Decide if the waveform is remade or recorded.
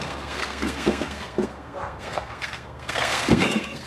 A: remade